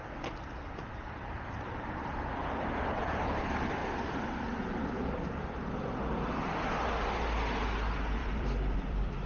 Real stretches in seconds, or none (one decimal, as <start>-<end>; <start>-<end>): 0.0-8.2